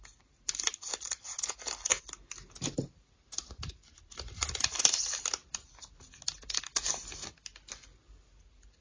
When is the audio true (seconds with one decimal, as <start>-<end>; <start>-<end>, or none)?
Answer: 0.0-8.8